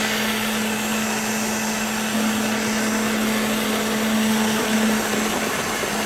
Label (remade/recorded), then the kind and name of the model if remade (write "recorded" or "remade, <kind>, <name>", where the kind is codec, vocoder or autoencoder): recorded